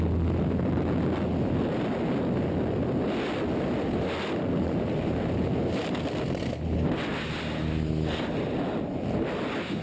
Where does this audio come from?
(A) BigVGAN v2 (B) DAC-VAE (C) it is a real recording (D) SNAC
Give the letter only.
C